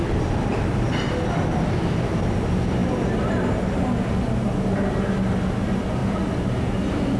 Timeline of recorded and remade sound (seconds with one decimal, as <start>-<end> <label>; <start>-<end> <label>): 0.0-0.5 recorded; 0.5-1.0 remade; 1.0-7.2 recorded